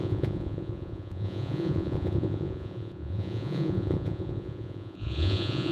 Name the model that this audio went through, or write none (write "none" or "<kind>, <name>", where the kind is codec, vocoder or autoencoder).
vocoder, Vocos